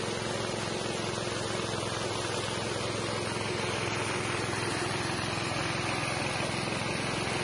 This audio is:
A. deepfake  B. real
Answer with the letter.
B